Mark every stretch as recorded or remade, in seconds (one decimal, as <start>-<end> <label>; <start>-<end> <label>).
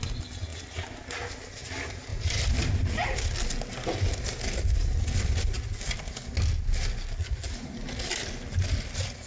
0.0-2.1 recorded; 2.1-2.8 remade; 2.8-9.3 recorded